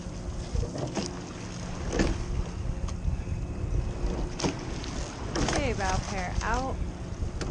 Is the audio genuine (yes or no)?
yes